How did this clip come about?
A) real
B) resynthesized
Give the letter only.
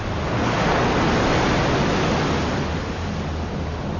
A